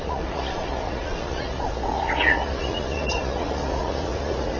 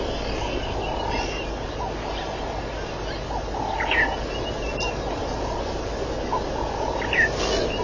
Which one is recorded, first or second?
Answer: second